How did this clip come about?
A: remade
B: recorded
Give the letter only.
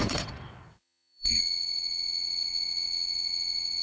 A